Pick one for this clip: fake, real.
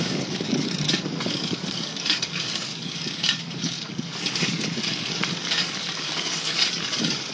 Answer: fake